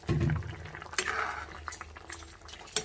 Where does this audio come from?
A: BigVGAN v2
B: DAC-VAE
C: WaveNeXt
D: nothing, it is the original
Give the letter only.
D